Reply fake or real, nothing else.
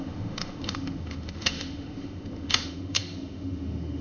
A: fake